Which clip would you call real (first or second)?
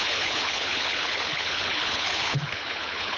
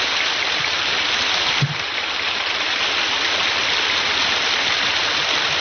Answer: second